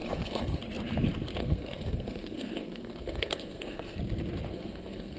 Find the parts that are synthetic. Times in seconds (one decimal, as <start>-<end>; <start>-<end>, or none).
0.0-0.6; 1.4-4.0; 4.5-5.2